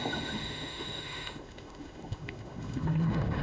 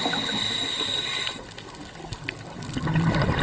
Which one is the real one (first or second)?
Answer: second